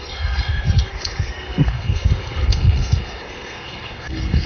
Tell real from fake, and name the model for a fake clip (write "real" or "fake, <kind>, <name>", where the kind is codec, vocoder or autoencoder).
fake, codec, SNAC